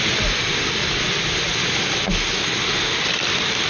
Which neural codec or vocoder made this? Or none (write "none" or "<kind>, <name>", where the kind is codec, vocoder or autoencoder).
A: none